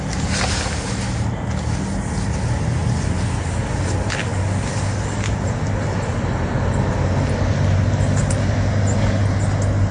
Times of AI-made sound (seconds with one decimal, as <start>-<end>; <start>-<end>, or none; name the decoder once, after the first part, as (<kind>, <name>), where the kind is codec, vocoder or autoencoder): none